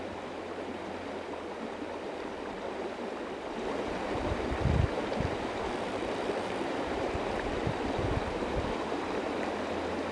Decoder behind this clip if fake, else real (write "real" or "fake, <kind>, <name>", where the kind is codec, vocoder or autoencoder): fake, vocoder, BigVGAN v2